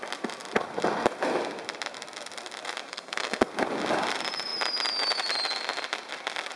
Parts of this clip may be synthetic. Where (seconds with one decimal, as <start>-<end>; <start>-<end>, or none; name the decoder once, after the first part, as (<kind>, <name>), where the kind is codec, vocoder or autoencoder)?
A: 2.9-3.5 (codec, SNAC)